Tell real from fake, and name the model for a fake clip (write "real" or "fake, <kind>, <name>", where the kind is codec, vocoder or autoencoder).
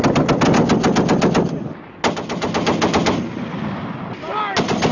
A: real